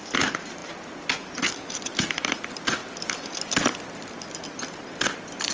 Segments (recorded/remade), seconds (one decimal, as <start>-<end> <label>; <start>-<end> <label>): 0.0-5.5 recorded